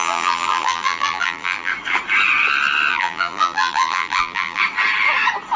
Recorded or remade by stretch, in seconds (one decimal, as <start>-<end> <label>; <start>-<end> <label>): 0.0-1.7 remade; 1.7-2.9 recorded; 2.9-4.6 remade; 4.6-5.6 recorded